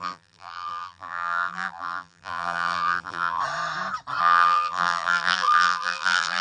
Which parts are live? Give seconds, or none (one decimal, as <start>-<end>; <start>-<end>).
3.4-4.2